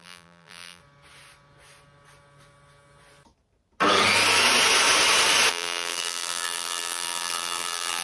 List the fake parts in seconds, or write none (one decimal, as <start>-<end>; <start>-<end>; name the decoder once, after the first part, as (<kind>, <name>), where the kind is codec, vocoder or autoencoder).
0.0-0.8 (vocoder, BigVGAN v2); 5.5-8.0